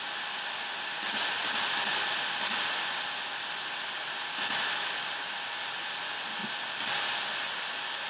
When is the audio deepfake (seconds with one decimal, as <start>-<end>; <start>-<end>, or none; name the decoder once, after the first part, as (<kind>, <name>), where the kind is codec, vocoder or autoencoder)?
none

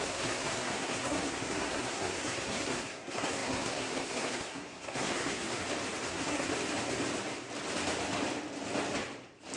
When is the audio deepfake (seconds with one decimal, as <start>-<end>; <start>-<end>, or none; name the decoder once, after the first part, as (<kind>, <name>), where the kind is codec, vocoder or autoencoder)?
0.0-5.6 (codec, SNAC); 6.1-6.5

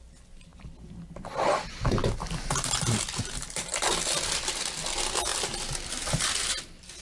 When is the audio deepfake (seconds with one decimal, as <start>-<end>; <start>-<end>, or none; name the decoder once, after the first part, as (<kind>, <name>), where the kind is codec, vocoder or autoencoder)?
none

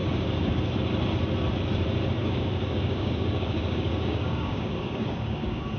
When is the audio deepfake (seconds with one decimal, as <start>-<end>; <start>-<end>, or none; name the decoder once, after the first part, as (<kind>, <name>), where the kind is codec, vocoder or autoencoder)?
0.0-0.6 (codec, DAC); 2.2-5.8

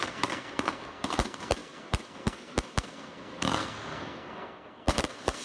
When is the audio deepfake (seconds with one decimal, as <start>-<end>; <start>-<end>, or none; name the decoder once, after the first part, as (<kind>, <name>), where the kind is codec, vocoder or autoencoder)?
0.0-5.4 (codec, SNAC)

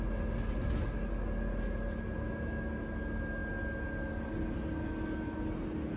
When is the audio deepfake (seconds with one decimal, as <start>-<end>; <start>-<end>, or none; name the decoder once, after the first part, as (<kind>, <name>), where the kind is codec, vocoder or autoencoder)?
none